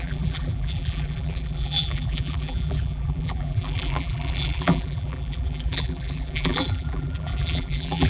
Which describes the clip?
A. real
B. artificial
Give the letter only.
B